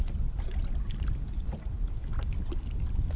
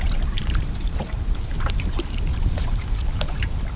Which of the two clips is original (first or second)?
first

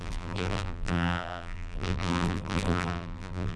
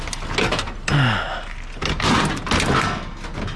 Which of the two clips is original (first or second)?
second